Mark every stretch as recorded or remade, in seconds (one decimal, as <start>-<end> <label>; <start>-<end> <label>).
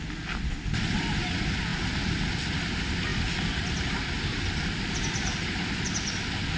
0.0-6.6 recorded